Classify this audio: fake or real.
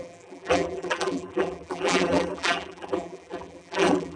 fake